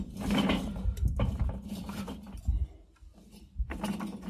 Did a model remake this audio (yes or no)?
no